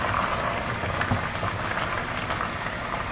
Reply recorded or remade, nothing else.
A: recorded